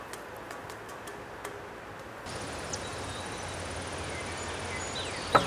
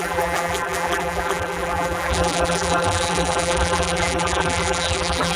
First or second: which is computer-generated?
second